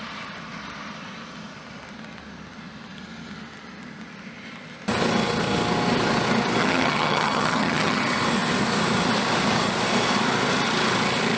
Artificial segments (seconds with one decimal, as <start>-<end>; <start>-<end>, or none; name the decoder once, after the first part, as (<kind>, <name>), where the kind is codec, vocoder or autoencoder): 6.6-8.0 (vocoder, HiFi-GAN)